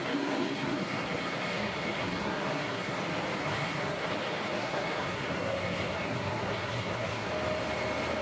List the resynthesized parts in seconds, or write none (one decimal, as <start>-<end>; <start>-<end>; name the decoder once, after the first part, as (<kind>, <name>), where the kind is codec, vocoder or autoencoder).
0.0-3.0 (codec, SNAC); 3.4-4.1; 4.6-7.3